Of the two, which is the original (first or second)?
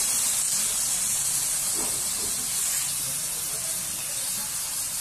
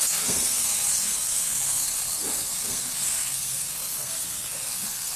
first